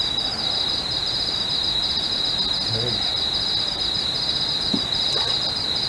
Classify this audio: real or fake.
real